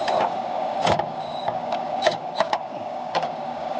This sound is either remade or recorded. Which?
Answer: remade